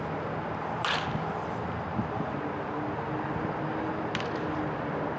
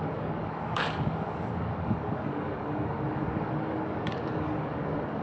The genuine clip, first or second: first